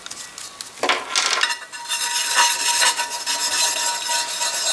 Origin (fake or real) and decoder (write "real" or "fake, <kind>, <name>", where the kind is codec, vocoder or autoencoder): real